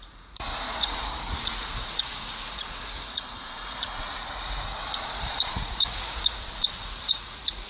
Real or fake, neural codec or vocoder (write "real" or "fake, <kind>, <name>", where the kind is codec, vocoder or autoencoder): fake, vocoder, Vocos